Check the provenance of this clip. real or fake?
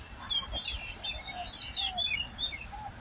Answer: real